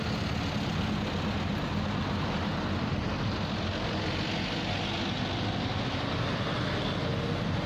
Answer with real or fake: real